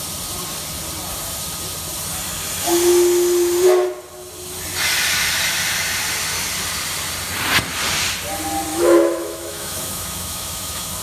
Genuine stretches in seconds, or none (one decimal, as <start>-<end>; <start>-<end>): 0.0-8.7